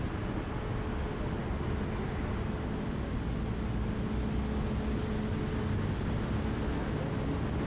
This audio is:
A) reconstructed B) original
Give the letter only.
B